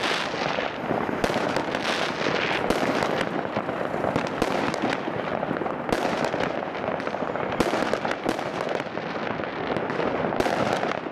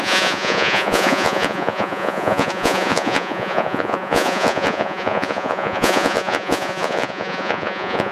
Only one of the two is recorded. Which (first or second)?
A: first